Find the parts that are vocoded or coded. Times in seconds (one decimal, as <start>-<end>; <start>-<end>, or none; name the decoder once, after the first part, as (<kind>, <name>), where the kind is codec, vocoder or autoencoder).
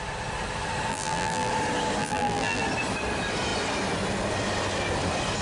0.9-1.5 (vocoder, BigVGAN v2); 2.0-2.6